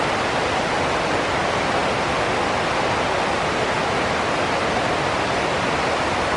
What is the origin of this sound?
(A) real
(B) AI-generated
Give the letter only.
A